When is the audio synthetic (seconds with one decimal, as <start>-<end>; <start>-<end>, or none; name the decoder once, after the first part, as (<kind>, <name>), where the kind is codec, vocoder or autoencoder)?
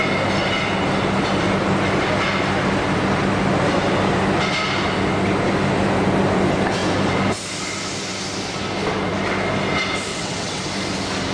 10.1-10.6 (vocoder, WaveNeXt)